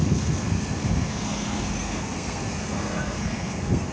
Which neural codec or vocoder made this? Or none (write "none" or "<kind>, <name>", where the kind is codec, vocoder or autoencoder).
codec, SNAC